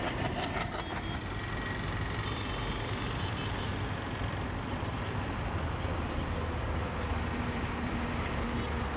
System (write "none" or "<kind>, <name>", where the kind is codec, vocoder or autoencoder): none